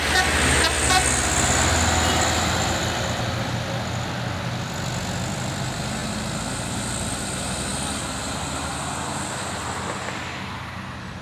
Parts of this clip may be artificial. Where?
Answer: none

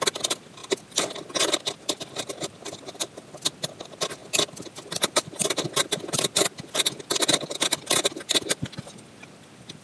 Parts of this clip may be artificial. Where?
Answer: none

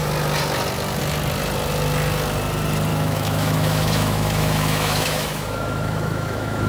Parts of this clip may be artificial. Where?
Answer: 2.9-6.7 (autoencoder, DAC-VAE)

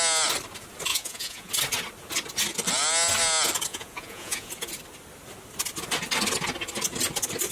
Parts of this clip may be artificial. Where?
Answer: 0.9-1.5 (vocoder, Vocos); 3.7-4.5